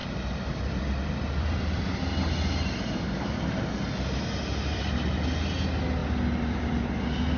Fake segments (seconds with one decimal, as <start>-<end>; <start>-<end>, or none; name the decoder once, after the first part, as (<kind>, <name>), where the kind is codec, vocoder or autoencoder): 0.0-3.6 (vocoder, BigVGAN v2); 6.0-7.0